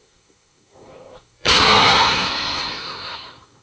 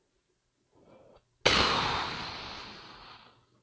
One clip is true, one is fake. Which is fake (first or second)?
first